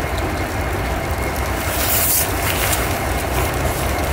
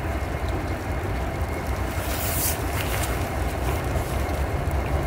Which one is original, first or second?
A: first